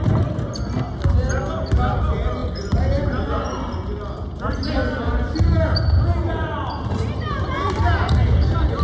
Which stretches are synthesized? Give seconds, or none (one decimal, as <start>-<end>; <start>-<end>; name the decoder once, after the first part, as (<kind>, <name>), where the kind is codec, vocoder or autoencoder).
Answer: 6.4-8.1 (vocoder, BigVGAN v2)